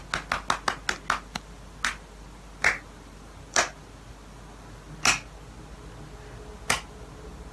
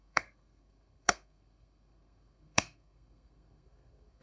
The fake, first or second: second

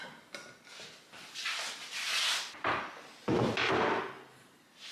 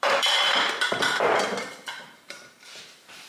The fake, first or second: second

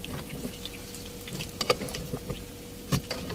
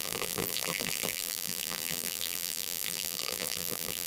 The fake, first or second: second